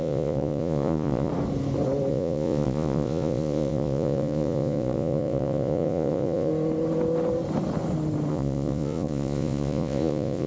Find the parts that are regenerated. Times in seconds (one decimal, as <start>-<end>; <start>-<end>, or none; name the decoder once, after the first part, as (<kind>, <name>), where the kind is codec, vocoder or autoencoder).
0.0-1.3 (vocoder, Vocos); 2.1-6.5; 8.3-10.5